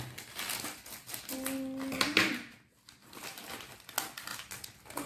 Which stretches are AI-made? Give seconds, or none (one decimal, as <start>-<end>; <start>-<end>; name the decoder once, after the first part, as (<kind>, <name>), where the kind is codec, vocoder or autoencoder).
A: none